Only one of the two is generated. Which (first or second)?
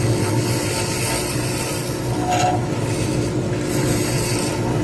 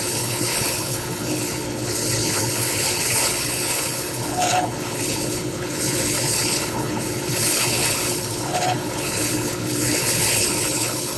second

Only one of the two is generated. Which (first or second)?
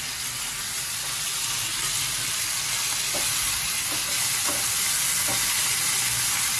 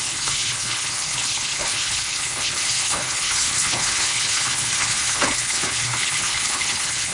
second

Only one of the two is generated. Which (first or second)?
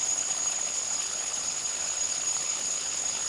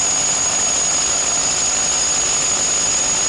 first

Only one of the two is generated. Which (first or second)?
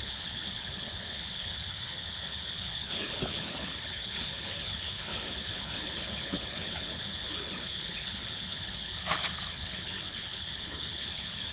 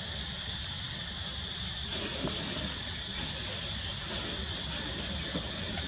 first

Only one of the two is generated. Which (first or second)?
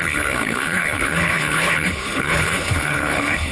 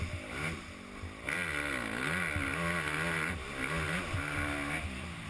first